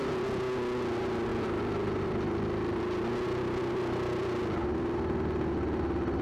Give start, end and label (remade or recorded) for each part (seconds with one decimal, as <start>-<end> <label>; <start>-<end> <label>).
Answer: 0.0-6.2 recorded